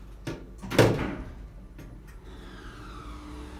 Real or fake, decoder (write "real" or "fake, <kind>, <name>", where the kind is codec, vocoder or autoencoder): real